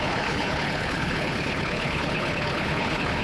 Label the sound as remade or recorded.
remade